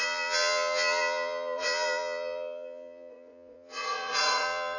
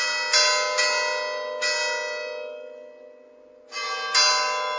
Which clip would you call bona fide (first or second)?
second